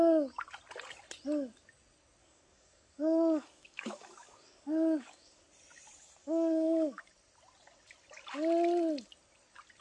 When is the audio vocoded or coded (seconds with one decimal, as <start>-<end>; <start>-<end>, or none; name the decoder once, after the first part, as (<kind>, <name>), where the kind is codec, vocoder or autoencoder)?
2.2-5.4 (codec, DAC); 6.2-7.0